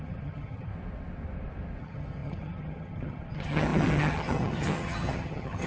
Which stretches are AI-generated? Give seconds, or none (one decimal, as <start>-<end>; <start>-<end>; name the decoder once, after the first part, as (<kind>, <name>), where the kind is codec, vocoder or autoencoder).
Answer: 0.0-0.7 (vocoder, HiFi-GAN); 1.8-5.7